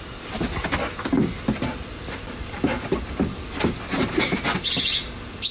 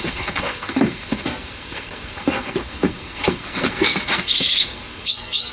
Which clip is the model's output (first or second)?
second